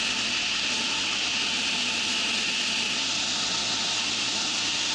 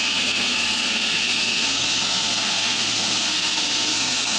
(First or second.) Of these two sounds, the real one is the first